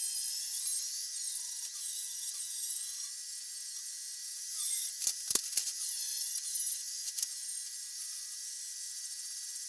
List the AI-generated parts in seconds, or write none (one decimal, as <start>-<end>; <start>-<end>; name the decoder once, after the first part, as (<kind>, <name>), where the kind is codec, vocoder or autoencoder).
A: 1.7-2.8 (vocoder, BigVGAN v2); 4.2-5.4